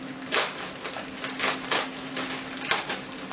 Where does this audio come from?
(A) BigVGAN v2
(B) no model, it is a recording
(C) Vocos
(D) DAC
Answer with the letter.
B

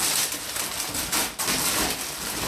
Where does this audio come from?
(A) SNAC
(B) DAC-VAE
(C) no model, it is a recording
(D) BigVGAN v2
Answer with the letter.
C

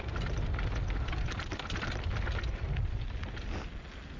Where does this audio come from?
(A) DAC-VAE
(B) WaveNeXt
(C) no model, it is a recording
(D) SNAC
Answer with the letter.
C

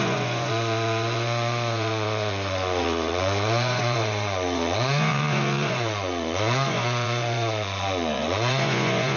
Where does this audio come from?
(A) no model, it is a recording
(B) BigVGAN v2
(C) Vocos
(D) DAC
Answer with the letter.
C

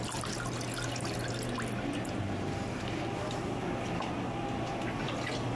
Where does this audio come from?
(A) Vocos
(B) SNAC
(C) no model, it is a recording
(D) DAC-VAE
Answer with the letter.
C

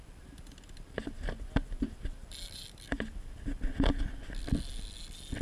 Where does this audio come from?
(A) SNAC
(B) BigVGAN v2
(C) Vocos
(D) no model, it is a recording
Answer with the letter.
D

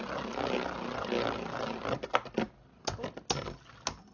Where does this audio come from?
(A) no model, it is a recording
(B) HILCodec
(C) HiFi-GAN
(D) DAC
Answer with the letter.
A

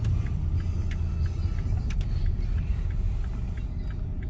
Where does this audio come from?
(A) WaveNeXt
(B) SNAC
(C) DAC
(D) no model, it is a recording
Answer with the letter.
D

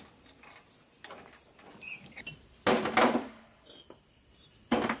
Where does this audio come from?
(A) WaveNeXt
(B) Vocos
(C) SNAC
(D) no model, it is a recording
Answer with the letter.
D